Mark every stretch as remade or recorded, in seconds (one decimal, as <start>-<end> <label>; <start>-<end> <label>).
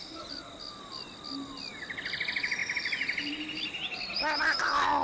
0.0-1.7 recorded; 1.7-2.2 remade; 2.2-5.0 recorded